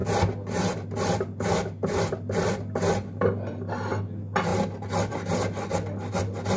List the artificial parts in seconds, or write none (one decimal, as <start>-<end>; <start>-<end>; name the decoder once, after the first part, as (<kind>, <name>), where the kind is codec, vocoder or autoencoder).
none